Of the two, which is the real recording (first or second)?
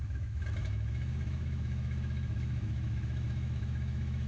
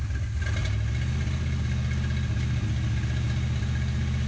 second